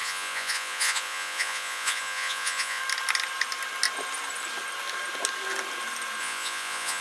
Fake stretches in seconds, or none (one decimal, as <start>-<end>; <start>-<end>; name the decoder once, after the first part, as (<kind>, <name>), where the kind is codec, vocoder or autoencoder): 0.0-2.8 (vocoder, Vocos); 6.2-7.0